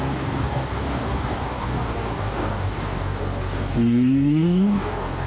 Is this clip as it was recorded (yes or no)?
no